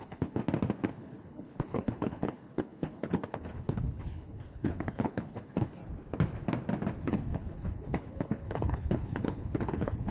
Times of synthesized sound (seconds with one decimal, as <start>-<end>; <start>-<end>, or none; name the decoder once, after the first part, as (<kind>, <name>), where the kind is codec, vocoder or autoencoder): 0.0-0.4 (codec, HILCodec); 0.9-5.8; 7.0-10.1

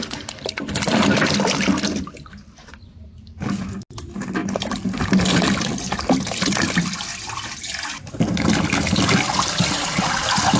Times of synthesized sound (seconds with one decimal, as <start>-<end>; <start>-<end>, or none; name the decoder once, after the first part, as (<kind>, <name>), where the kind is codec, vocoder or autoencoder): none

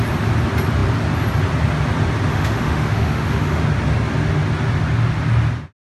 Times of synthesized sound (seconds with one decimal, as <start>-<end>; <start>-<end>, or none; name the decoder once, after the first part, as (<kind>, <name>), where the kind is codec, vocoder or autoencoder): 2.3-3.6 (autoencoder, DAC-VAE)

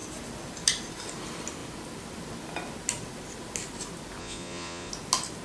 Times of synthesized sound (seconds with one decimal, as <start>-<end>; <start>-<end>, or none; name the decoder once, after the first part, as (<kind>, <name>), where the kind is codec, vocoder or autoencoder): 4.2-4.9 (vocoder, Vocos)